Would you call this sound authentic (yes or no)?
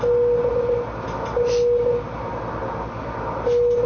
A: yes